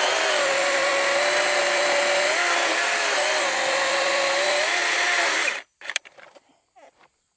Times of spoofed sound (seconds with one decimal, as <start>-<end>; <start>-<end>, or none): 0.0-0.9; 1.7-2.7; 3.3-7.4